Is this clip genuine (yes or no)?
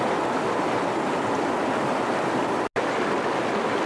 yes